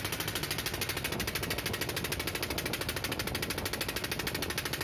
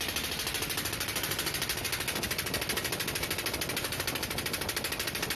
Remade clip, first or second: second